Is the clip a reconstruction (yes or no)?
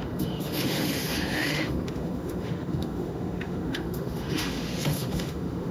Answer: yes